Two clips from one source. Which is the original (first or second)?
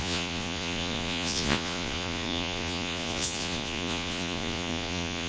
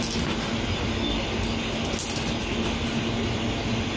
second